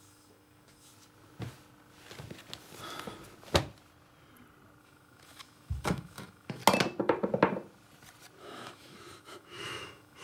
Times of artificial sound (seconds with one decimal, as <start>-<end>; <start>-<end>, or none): 0.0-0.9; 4.8-6.6; 8.4-10.2